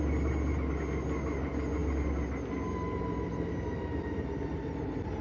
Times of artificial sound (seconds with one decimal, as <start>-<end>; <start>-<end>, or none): none